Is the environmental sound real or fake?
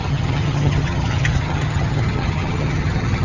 fake